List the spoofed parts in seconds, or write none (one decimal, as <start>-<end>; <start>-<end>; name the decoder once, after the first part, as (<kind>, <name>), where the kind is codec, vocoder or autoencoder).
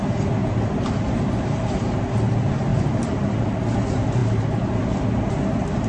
0.4-2.0 (vocoder, BigVGAN v2); 2.7-3.5; 4.2-4.8